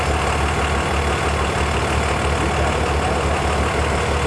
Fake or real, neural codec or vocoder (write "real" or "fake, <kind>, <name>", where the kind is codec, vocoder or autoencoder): real